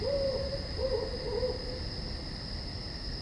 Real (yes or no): yes